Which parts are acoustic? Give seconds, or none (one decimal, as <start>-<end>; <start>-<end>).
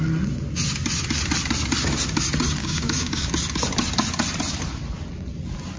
0.0-2.6; 3.3-5.8